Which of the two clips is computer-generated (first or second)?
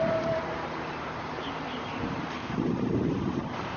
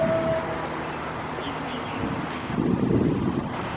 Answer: first